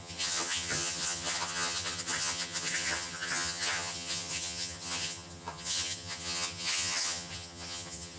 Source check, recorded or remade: remade